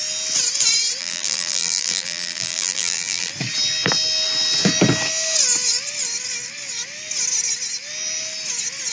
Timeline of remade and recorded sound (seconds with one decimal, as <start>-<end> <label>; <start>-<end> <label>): 0.0-1.0 recorded; 1.0-3.3 remade; 3.3-8.9 recorded